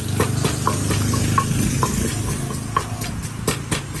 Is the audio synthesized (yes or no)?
no